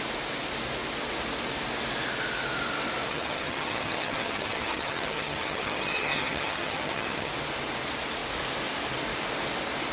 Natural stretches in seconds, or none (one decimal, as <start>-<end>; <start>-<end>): 0.0-3.1; 7.3-9.9